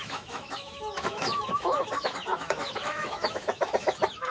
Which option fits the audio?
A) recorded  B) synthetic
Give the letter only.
B